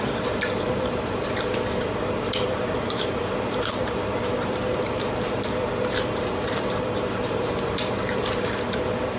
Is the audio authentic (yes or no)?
no